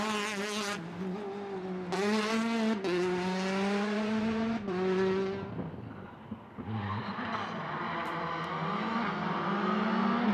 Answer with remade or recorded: recorded